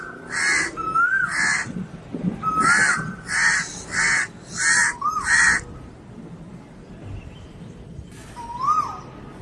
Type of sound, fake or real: real